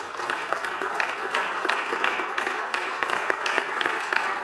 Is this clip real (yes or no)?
no